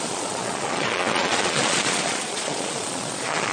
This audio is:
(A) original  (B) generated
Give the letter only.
B